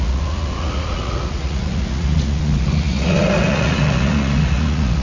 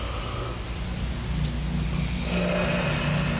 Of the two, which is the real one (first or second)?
second